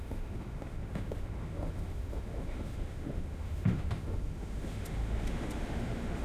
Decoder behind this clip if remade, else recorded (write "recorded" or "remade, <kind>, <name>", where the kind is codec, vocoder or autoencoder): remade, autoencoder, DAC-VAE